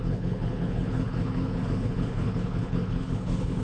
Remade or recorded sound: remade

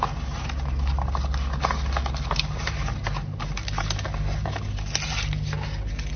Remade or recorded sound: recorded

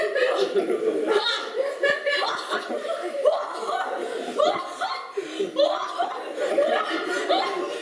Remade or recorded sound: recorded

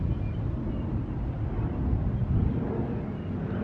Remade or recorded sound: recorded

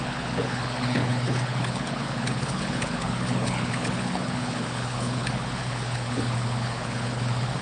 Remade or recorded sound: remade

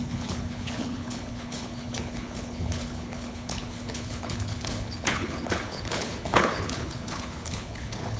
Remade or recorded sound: remade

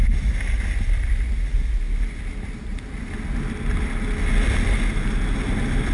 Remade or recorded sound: recorded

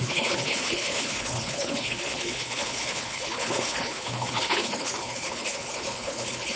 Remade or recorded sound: remade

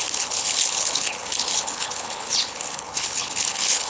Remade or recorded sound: remade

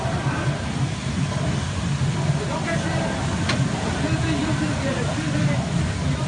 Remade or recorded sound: recorded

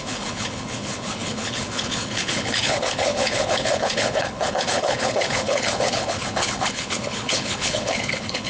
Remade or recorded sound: remade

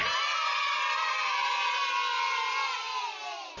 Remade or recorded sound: recorded